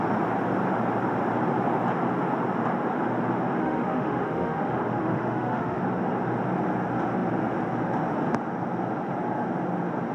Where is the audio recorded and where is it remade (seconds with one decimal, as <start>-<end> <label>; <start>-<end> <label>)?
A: 0.0-3.6 recorded; 3.6-5.8 remade; 5.8-10.1 recorded

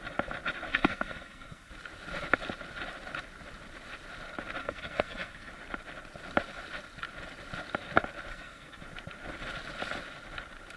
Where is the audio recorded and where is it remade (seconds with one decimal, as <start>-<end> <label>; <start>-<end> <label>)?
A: 0.0-0.7 recorded; 0.7-1.7 remade; 1.7-4.6 recorded; 4.6-5.5 remade; 5.5-8.3 recorded; 8.3-8.8 remade; 8.8-10.8 recorded

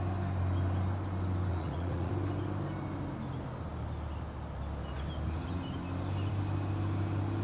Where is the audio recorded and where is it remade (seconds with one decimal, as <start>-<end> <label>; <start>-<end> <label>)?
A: 0.0-1.5 recorded; 1.5-2.1 remade; 2.1-7.4 recorded

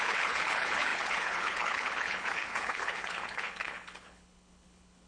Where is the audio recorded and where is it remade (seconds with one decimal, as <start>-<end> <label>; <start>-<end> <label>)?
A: 0.0-5.1 remade

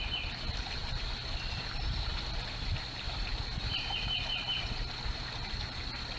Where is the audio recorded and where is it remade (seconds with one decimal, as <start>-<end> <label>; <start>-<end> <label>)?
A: 0.0-6.2 recorded

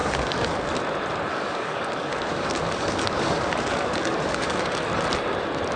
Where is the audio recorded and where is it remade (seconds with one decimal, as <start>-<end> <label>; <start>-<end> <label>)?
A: 0.0-0.7 remade; 0.7-1.3 recorded; 1.3-4.8 remade; 4.8-5.8 recorded

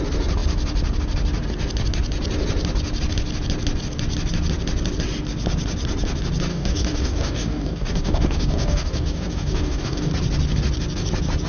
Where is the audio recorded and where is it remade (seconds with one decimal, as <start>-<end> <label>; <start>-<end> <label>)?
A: 0.0-6.5 recorded; 6.5-10.1 remade; 10.1-11.5 recorded